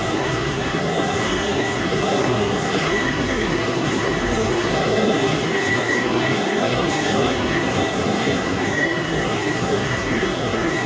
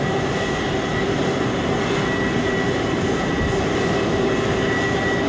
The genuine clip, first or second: second